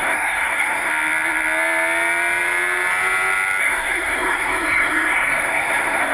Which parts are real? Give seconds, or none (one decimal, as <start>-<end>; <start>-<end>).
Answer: 0.9-3.6